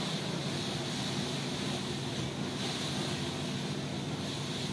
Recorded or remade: recorded